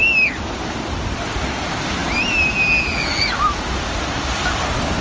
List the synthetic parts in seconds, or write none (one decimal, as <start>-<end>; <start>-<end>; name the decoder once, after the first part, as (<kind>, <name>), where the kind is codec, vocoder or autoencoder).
none

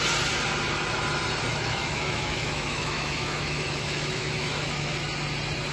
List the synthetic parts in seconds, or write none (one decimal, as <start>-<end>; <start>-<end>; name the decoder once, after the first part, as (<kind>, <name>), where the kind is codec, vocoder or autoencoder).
1.5-4.9 (autoencoder, DAC-VAE)

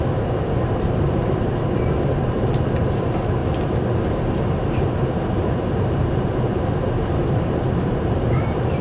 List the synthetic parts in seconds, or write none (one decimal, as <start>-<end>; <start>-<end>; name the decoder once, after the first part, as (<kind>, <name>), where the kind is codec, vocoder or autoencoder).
0.0-3.4 (vocoder, BigVGAN v2); 4.0-8.8

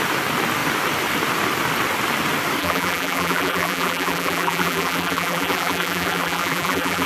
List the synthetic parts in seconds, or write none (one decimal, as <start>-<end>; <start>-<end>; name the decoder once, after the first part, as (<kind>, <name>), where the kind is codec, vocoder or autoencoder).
2.6-7.1 (vocoder, BigVGAN v2)